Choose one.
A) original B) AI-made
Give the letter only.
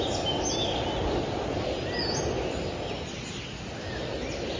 A